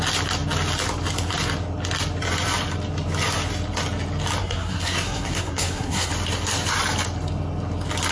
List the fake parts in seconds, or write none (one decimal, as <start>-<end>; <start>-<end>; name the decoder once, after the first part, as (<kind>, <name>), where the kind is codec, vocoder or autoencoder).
4.4-6.1 (codec, SNAC)